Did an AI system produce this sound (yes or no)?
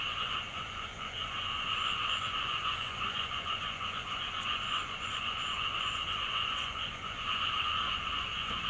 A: yes